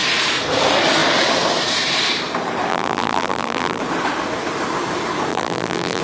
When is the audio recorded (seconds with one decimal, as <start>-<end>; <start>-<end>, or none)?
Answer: 0.0-2.7; 3.8-5.3